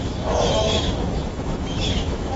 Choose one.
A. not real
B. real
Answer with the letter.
A